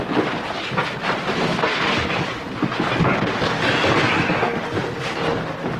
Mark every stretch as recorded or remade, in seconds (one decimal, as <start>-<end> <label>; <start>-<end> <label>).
0.0-1.5 recorded; 1.5-5.0 remade; 5.0-5.8 recorded